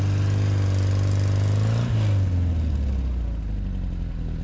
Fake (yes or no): no